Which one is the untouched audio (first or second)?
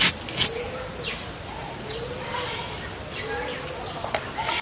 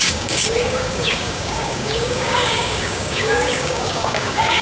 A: first